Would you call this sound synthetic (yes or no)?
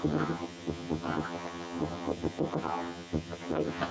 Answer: yes